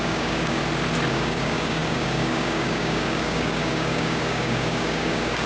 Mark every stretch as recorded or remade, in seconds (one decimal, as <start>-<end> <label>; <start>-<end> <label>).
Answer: 0.0-0.6 remade; 0.6-1.1 recorded; 1.1-5.5 remade